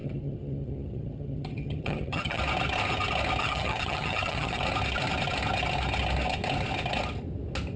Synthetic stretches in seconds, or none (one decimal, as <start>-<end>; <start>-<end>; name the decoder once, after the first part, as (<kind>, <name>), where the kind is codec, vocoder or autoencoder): 0.0-2.4 (vocoder, HiFi-GAN); 3.4-4.6